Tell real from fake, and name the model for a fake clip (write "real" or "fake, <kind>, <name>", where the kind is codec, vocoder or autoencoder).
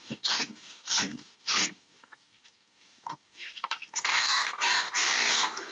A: fake, codec, DAC